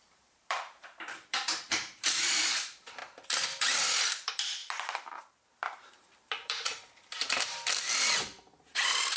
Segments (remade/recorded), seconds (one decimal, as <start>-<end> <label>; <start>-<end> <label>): 0.0-3.0 remade; 3.0-3.6 recorded; 3.6-9.2 remade